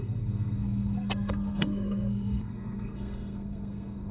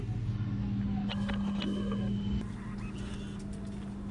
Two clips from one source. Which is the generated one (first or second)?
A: first